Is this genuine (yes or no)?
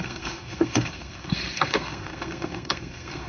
no